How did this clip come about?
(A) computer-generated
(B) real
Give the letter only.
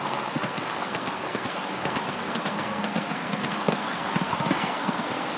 A